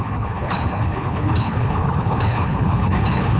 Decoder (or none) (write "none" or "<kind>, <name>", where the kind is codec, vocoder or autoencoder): codec, HILCodec